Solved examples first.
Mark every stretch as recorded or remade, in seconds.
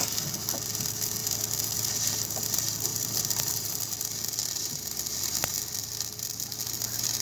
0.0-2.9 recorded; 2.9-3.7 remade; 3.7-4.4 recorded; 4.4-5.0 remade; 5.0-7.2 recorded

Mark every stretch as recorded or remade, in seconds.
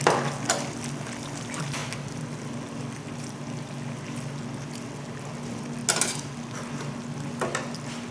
0.0-8.1 recorded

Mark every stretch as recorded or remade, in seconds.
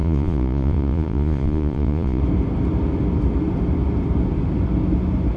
0.0-2.2 remade; 2.2-5.4 recorded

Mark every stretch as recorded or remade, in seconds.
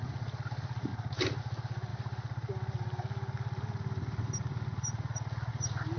0.0-6.0 recorded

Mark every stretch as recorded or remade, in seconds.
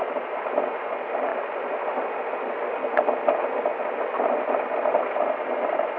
0.0-6.0 recorded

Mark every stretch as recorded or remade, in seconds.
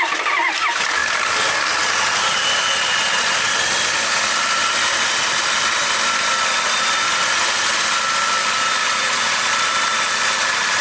0.0-8.8 recorded; 8.8-9.4 remade; 9.4-10.8 recorded